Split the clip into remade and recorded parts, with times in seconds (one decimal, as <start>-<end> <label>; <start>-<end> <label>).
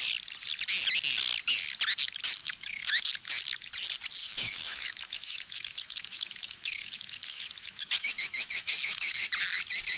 0.0-2.4 recorded; 2.4-3.3 remade; 3.3-4.2 recorded; 4.2-9.2 remade; 9.2-10.0 recorded